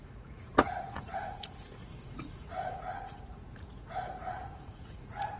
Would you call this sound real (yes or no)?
no